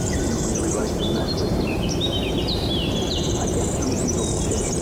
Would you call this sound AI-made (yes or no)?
yes